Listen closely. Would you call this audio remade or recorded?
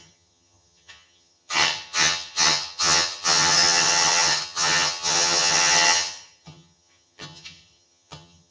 remade